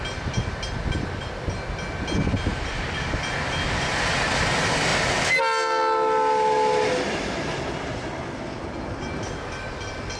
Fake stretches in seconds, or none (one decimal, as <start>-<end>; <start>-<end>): none